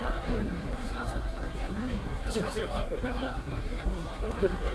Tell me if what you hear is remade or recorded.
remade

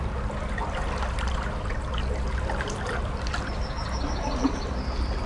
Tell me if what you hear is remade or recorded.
recorded